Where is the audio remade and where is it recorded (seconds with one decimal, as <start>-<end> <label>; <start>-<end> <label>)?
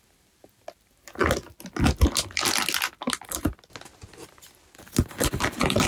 0.0-5.9 recorded